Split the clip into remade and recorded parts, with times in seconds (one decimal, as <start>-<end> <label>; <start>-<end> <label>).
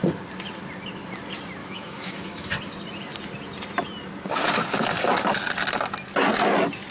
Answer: 0.0-1.6 recorded; 1.6-2.5 remade; 2.5-6.9 recorded